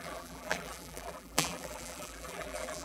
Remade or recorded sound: remade